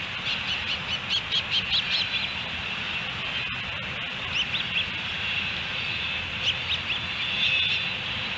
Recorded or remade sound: recorded